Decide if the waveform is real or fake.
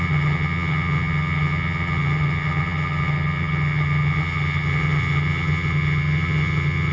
fake